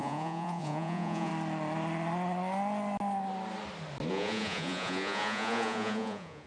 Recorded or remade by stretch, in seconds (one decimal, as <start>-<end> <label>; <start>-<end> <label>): 0.0-1.3 remade; 1.3-4.1 recorded; 4.1-6.5 remade